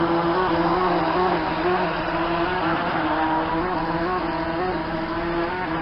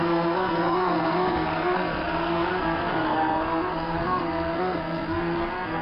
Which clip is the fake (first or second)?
second